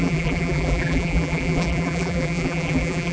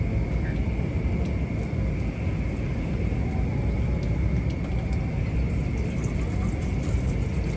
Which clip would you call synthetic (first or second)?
first